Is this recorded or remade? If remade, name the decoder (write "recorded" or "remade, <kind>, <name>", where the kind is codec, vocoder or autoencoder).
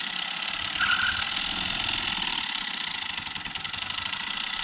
recorded